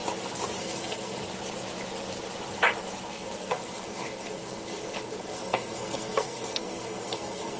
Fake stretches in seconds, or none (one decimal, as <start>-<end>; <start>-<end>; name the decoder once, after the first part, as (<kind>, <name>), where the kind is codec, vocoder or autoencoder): 0.6-1.2 (codec, SNAC); 3.1-7.6